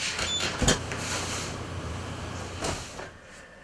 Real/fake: real